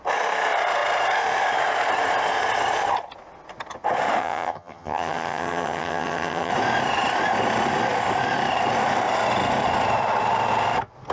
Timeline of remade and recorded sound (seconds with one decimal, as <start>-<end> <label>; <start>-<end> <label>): 0.0-4.2 recorded; 4.2-6.5 remade; 6.5-11.1 recorded